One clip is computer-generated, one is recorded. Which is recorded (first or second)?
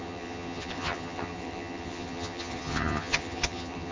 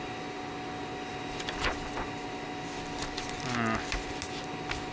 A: second